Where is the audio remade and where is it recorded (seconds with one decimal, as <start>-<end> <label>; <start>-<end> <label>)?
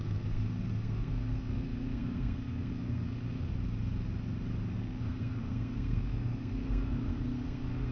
0.0-3.5 remade; 3.5-4.7 recorded; 4.7-7.9 remade